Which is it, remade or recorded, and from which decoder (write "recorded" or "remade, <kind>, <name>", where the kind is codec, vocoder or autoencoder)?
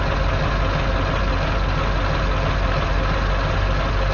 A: recorded